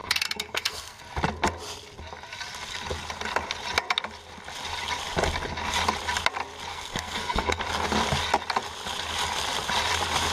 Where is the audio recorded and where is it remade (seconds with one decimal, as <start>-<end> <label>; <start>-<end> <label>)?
0.0-1.0 remade; 1.0-6.7 recorded; 6.7-7.6 remade; 7.6-10.3 recorded